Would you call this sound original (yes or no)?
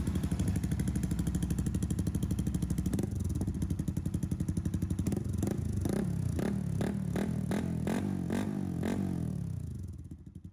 yes